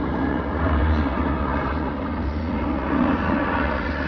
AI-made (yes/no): yes